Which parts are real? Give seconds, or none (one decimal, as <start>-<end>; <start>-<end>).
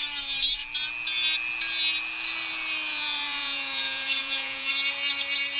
0.0-2.9; 4.7-5.6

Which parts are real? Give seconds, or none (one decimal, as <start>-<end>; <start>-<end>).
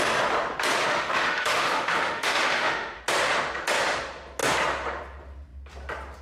0.0-0.9; 3.0-6.2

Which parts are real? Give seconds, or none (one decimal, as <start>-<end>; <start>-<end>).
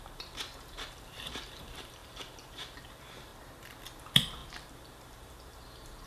3.3-4.0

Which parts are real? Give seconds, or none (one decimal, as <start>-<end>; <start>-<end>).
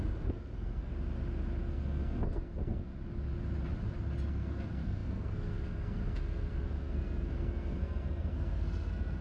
0.9-1.7; 2.9-4.3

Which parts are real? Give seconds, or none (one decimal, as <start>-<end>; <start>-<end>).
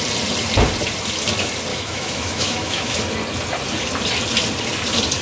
0.0-1.7; 3.0-5.2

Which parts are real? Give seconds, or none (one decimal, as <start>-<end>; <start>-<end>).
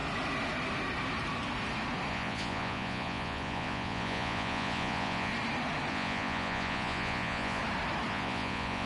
0.0-2.1; 5.3-5.9; 7.6-8.1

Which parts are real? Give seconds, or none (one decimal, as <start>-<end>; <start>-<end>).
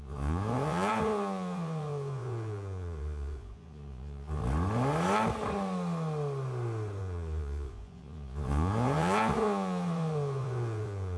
4.4-7.0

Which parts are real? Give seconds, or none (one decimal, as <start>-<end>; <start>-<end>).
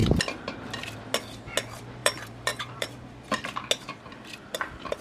0.0-2.0; 3.2-5.0